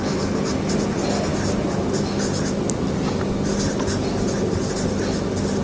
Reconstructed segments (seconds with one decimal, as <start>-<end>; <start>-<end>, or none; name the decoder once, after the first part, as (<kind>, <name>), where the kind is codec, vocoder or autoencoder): none